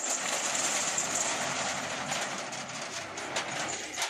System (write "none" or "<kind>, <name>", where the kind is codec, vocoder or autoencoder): none